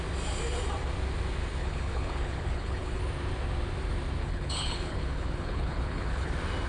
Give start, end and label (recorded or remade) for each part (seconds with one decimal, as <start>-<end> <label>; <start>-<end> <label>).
0.0-1.6 recorded; 1.6-3.0 remade; 3.0-4.2 recorded; 4.2-6.3 remade; 6.3-6.7 recorded